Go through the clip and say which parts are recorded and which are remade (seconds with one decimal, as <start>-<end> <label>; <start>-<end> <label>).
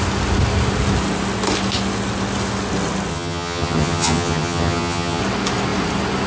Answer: 0.0-3.1 recorded; 3.1-5.2 remade; 5.2-6.3 recorded